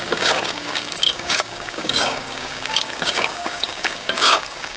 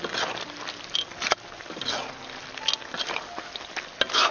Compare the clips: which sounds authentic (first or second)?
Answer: second